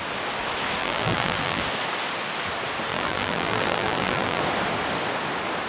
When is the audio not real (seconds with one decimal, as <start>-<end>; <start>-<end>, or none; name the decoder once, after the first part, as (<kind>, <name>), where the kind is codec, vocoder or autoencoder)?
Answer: 0.8-1.6 (vocoder, BigVGAN v2); 2.9-4.4